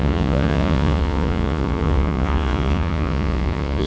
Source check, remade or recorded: remade